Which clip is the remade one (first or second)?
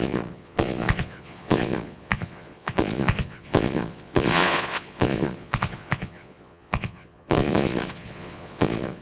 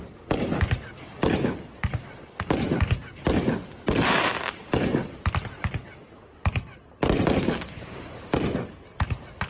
first